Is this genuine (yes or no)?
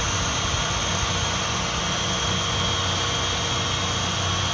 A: no